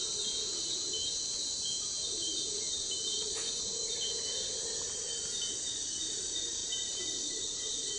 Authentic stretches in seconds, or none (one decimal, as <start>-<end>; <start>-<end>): 0.0-2.3; 4.0-6.6; 7.6-8.0